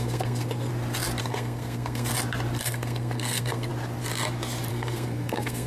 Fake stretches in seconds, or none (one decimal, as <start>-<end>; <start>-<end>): 0.0-0.7; 1.2-2.1; 2.6-3.7; 4.7-5.7